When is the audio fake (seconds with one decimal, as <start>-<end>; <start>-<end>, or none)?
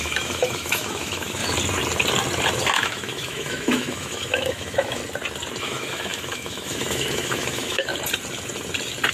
0.0-1.4; 2.7-5.0; 5.6-7.9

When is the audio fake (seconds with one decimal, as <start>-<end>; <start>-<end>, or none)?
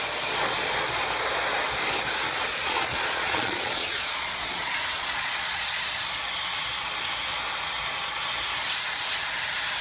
2.5-5.8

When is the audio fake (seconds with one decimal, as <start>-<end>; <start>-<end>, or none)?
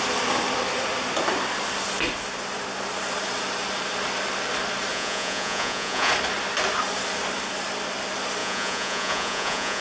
4.9-6.1; 8.4-9.8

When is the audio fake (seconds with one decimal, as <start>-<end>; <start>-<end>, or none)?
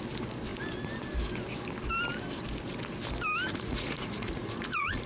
3.5-5.1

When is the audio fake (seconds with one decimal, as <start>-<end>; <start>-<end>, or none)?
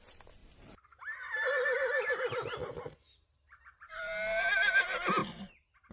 0.4-3.9